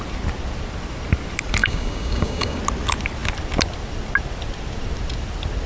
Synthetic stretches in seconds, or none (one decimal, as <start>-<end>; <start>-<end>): 1.6-2.6